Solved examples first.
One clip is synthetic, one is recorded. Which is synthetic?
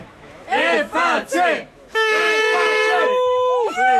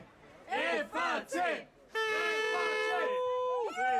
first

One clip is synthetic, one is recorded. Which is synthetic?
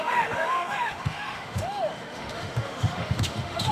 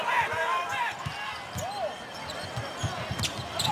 first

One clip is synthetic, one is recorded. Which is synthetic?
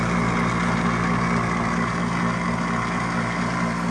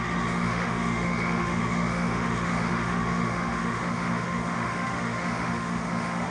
second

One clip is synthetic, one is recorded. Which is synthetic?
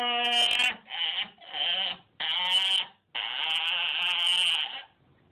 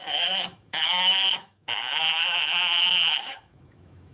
second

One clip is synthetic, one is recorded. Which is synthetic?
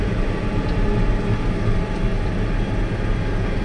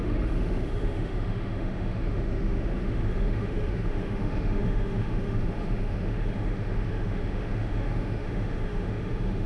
second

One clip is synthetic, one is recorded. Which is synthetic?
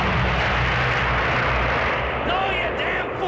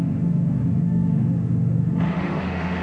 second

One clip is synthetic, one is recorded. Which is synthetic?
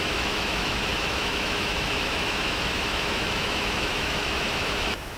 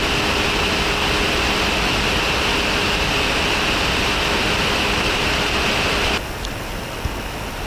first